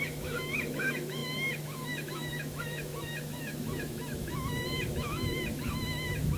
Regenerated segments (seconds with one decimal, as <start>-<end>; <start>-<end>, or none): 0.0-6.4